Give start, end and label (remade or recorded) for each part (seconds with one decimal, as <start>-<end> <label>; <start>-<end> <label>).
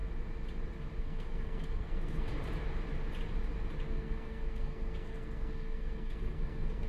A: 0.0-1.0 recorded; 1.0-2.3 remade; 2.3-3.9 recorded; 3.9-6.9 remade